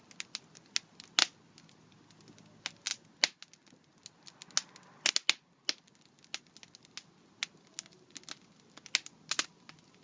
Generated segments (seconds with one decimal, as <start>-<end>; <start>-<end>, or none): none